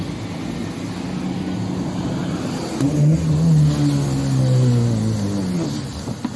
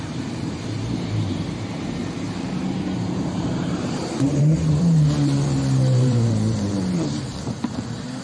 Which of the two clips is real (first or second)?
first